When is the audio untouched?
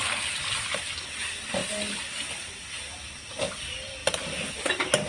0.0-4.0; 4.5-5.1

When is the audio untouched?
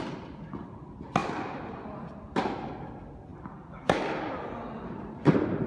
0.0-5.7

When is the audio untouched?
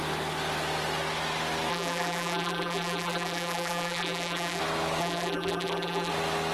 0.0-1.7; 4.6-5.0; 6.1-6.5